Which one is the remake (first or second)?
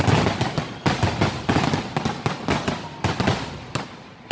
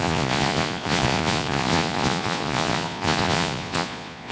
second